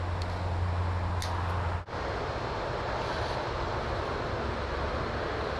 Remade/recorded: recorded